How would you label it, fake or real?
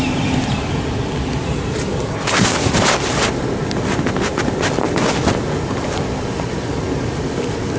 real